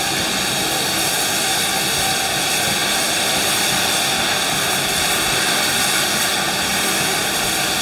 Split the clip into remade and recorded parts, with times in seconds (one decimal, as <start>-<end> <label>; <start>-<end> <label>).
0.0-7.8 recorded